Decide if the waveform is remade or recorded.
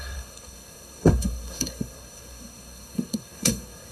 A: remade